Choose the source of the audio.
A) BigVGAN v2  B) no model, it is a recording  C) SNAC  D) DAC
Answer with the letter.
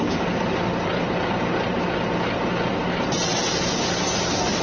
B